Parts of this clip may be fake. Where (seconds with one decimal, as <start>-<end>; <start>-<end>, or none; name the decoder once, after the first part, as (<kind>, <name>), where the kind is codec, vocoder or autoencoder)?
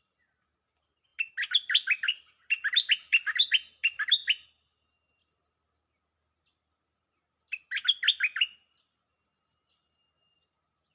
none